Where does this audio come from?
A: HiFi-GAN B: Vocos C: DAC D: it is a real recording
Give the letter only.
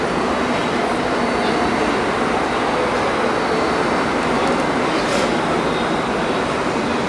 D